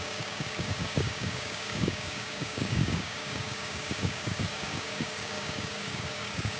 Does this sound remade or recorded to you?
remade